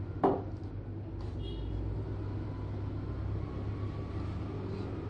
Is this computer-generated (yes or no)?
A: no